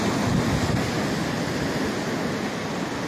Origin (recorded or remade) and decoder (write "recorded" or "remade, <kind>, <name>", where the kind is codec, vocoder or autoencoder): recorded